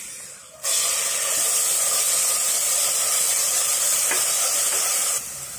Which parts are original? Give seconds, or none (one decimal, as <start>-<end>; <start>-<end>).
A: 0.0-3.9; 4.9-5.6